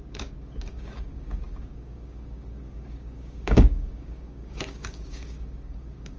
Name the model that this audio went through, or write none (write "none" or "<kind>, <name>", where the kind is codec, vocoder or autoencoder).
codec, DAC